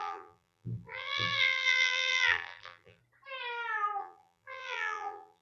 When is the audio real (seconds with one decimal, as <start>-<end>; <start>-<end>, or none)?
3.0-4.0